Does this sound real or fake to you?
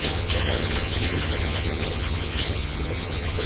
fake